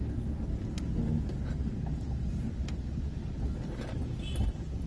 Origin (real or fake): real